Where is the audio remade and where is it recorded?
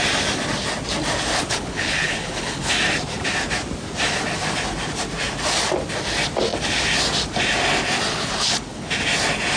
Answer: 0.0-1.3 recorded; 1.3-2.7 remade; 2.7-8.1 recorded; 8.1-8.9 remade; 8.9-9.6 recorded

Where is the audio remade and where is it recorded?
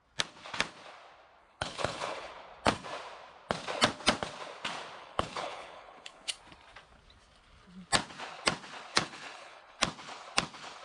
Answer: 0.0-1.4 recorded; 1.4-2.3 remade; 2.3-5.0 recorded; 5.0-6.3 remade; 6.3-8.9 recorded; 8.9-9.8 remade; 9.8-10.8 recorded